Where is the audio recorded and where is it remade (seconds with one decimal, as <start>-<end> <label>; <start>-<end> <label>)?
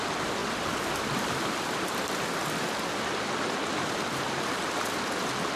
0.0-0.4 recorded; 0.4-2.9 remade; 2.9-5.6 recorded